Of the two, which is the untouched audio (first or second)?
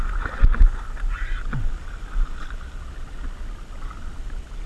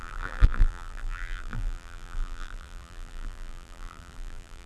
first